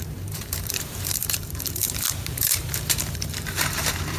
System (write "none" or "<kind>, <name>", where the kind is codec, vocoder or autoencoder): vocoder, BigVGAN v2